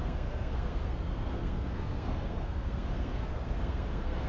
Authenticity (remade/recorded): remade